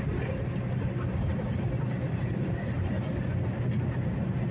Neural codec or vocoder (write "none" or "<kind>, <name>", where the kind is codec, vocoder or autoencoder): none